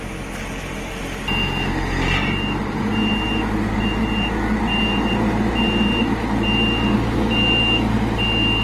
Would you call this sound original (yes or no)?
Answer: yes